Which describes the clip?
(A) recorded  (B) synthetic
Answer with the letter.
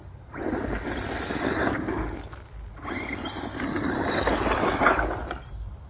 A